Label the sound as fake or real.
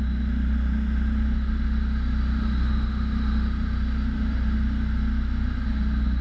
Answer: real